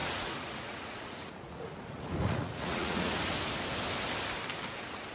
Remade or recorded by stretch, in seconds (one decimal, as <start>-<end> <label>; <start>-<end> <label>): 0.0-3.1 remade; 3.1-5.1 recorded